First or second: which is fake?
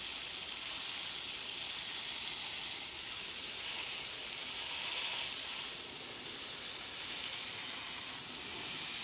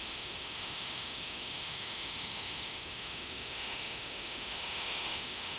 second